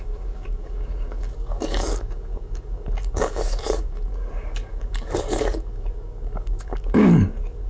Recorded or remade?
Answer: remade